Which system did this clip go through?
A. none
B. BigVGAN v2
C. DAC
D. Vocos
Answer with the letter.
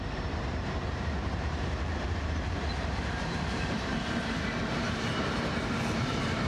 B